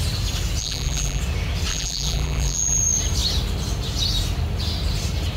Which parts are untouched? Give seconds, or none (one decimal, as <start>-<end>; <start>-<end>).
0.0-0.6; 1.2-1.7; 2.8-5.4